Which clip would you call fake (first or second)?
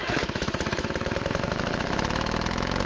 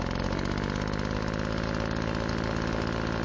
first